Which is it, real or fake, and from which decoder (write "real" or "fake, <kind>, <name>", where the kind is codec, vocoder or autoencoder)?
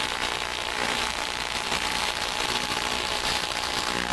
fake, vocoder, BigVGAN v2